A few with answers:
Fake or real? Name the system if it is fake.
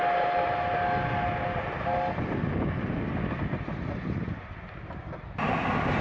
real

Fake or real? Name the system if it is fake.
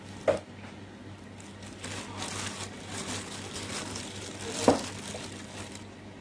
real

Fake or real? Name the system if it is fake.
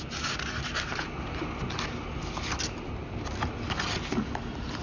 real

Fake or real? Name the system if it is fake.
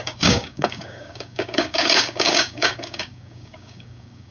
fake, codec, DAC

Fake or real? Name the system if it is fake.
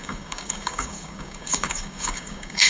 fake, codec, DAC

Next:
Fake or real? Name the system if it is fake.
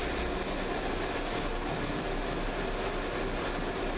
real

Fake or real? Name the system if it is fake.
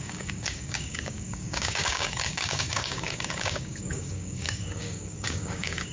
fake, codec, DAC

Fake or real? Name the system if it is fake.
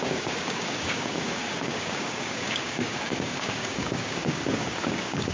fake, codec, DAC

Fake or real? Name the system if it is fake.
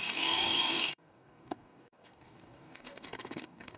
fake, codec, DAC